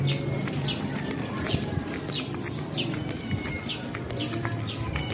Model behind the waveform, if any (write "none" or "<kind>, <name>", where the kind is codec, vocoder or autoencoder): none